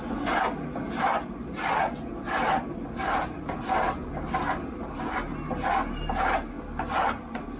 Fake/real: real